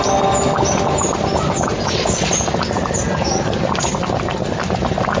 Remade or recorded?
recorded